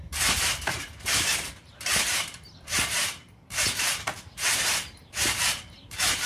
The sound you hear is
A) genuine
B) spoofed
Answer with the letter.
B